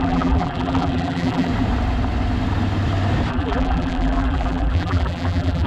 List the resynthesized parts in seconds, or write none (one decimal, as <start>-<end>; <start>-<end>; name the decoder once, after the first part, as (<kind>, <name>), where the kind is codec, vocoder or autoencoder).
0.0-1.5 (vocoder, BigVGAN v2); 3.3-5.7

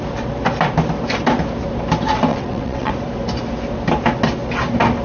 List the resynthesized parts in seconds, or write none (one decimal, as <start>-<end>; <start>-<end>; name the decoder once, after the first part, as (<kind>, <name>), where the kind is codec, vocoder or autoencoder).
2.3-2.9 (vocoder, WaveNeXt)

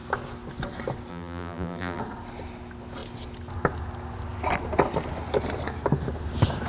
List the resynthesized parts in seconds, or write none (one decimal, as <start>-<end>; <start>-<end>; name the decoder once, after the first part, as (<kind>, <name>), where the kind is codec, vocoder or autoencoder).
1.1-2.0 (vocoder, BigVGAN v2)

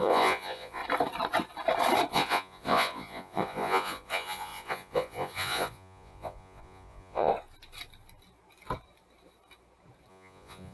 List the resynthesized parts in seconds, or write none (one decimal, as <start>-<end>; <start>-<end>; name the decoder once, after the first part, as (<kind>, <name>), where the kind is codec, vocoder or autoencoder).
0.0-0.8 (vocoder, Vocos); 2.1-7.3; 10.1-10.7

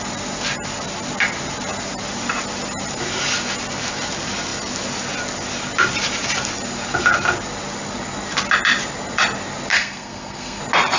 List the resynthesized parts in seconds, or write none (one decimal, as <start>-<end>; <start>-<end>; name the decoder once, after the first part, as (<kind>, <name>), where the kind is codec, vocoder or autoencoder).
9.7-10.6 (codec, SNAC)

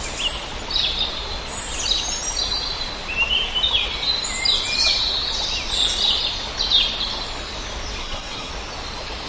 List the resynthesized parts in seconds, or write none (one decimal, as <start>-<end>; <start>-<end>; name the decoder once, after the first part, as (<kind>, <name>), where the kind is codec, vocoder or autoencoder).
8.0-8.5 (codec, SNAC)

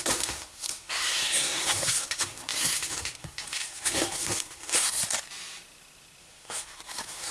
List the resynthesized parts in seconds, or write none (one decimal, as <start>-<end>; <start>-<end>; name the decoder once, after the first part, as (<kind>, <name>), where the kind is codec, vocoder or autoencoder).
0.0-5.0 (codec, SNAC); 6.2-7.3